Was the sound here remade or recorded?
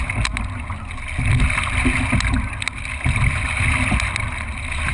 recorded